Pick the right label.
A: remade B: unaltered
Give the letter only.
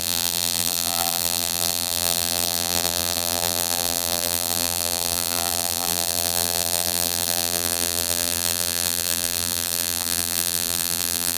A